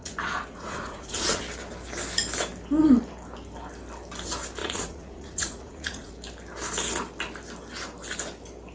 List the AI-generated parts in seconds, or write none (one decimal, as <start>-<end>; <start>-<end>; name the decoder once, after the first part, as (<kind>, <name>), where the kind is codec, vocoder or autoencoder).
0.0-1.4 (vocoder, Vocos); 4.6-6.1